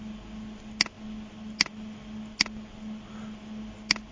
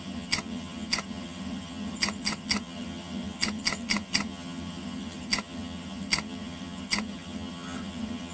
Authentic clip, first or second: first